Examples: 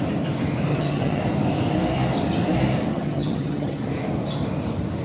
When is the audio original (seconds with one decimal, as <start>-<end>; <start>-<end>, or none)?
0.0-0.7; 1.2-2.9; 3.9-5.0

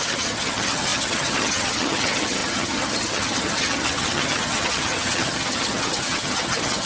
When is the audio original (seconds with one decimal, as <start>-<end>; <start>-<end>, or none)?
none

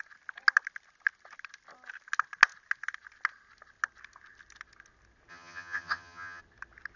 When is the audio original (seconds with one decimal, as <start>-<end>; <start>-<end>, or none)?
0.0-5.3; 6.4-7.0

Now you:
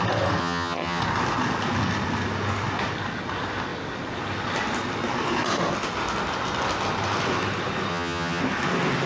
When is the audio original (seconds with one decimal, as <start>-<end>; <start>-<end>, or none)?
0.0-0.4; 1.0-7.9; 8.4-9.1

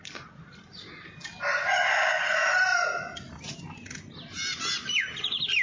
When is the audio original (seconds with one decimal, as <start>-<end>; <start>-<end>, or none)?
0.0-5.6

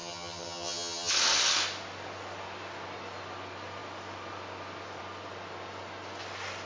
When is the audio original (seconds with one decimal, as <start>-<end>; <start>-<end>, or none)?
1.1-6.7